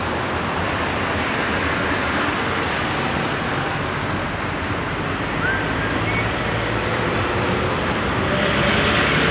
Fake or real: real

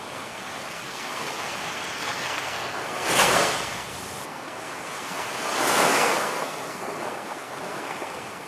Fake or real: fake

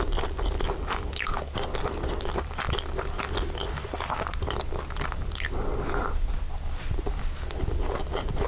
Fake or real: real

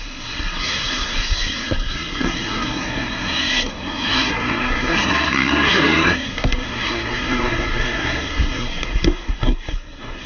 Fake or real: fake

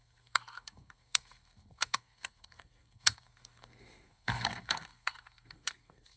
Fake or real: fake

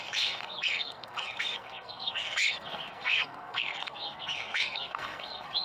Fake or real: fake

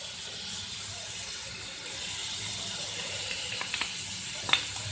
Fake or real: real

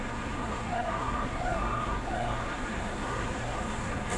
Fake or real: fake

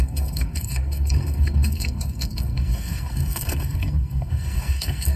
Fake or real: fake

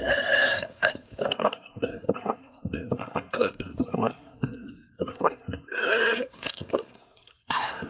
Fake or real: fake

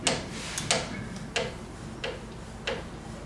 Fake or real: real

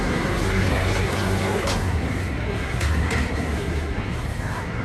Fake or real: fake